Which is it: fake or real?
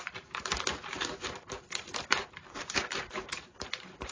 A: fake